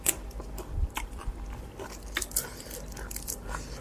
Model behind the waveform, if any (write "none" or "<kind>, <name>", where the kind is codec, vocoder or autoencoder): vocoder, BigVGAN v2